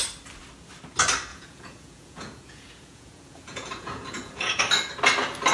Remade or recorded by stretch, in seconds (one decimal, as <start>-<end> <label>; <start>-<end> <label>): 0.0-1.3 recorded; 1.3-4.6 remade; 4.6-5.5 recorded